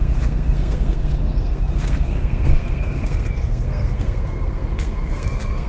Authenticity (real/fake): fake